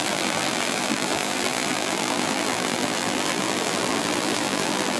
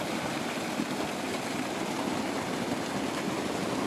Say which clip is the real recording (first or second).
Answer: second